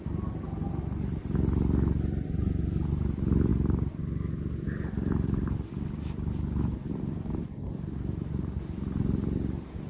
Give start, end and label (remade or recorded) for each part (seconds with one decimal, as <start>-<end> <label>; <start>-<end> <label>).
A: 0.0-9.9 recorded